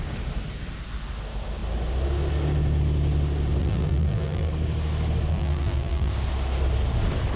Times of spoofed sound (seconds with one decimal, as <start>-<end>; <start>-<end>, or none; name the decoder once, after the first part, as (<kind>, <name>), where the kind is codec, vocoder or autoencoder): 3.6-4.5 (vocoder, BigVGAN v2); 5.3-6.1